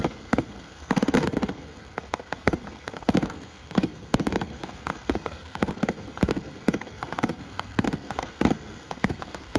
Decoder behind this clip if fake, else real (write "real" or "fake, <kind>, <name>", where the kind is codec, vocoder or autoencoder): fake, codec, SNAC